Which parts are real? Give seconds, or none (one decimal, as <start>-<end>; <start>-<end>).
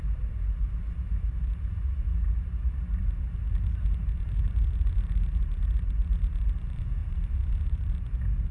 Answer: none